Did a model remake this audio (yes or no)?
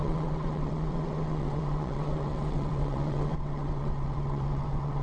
yes